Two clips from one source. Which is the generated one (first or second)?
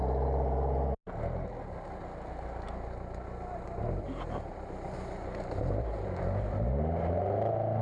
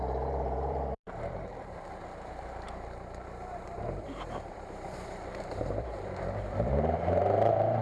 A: second